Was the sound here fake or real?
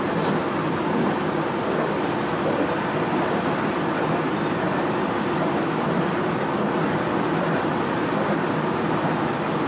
real